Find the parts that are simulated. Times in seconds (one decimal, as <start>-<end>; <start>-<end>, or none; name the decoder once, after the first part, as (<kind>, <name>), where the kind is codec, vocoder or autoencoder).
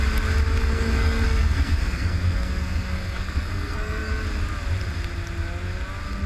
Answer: 0.6-4.1 (codec, SNAC)